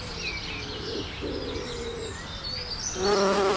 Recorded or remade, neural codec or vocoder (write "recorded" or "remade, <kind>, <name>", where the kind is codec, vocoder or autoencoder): recorded